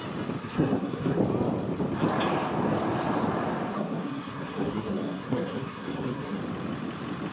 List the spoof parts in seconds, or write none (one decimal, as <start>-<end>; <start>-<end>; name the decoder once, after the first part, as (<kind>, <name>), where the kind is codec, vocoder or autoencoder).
0.4-1.2 (codec, SNAC); 3.7-6.4